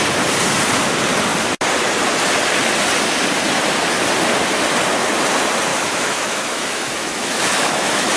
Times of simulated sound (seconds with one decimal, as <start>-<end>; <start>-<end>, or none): 5.7-8.2